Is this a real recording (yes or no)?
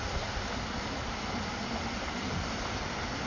yes